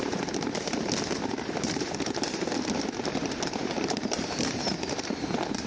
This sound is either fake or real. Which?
fake